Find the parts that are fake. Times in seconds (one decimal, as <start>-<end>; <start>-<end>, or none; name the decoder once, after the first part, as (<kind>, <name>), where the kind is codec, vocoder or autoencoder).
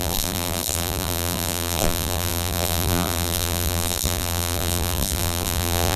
0.0-6.0 (vocoder, BigVGAN v2)